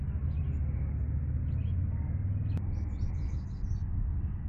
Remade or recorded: recorded